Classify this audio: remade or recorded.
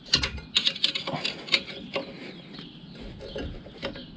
recorded